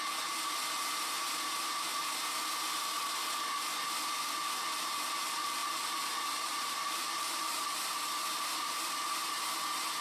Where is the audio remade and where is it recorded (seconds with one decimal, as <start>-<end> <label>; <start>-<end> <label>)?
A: 0.0-5.6 recorded; 5.6-8.0 remade; 8.0-10.0 recorded